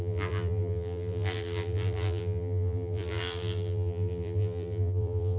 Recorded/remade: remade